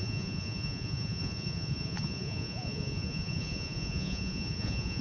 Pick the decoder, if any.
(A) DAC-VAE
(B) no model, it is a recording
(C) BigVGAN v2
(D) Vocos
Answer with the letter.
D